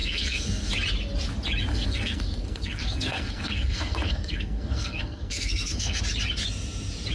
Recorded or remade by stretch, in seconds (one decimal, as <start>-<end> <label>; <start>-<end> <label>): 0.0-0.7 remade; 0.7-1.7 recorded; 1.7-6.0 remade; 6.0-7.1 recorded